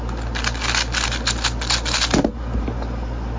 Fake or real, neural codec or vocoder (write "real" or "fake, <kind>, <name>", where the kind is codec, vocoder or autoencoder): real